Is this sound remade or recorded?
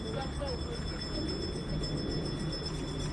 recorded